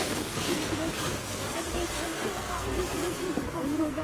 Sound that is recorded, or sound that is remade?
remade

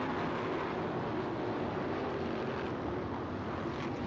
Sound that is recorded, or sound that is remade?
recorded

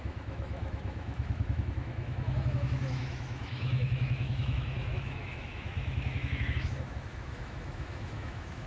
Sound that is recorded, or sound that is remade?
remade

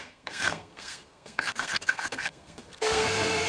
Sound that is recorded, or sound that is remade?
remade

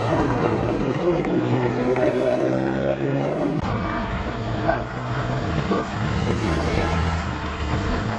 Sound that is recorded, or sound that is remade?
remade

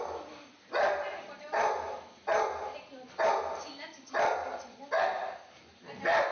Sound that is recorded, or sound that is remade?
recorded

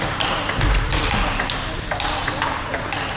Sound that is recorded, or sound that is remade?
recorded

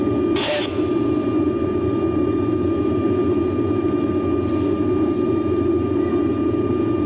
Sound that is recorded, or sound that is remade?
recorded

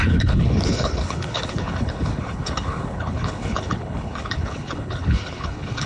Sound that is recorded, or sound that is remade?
remade